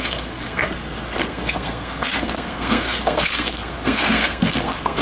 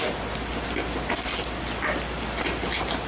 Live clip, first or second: second